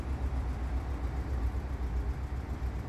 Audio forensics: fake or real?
real